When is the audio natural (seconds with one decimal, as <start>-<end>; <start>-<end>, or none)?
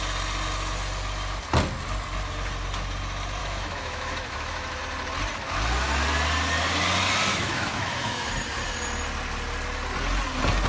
0.0-3.4; 4.8-7.3; 8.3-10.7